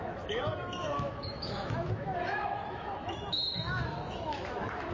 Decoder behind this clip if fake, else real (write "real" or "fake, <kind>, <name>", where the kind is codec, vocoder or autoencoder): fake, autoencoder, DAC-VAE